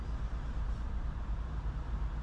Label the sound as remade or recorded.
recorded